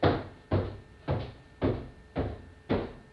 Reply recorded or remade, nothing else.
recorded